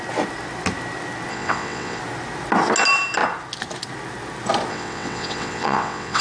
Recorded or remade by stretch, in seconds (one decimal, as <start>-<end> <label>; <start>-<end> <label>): 0.0-1.3 recorded; 1.3-2.0 remade; 2.0-4.7 recorded; 4.7-6.2 remade